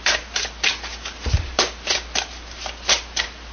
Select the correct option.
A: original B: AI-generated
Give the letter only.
A